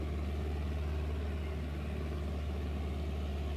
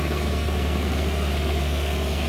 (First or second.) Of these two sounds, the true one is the first